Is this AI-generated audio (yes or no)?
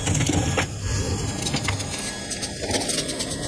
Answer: no